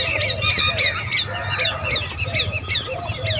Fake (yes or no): no